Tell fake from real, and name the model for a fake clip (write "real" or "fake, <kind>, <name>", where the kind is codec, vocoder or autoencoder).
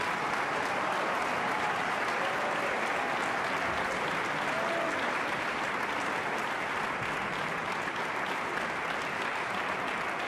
real